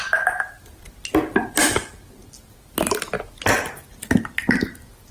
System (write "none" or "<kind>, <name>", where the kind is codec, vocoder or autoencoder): none